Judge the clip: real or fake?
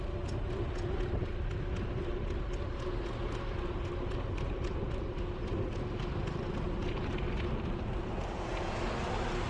real